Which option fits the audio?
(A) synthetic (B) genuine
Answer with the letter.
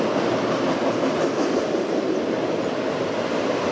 B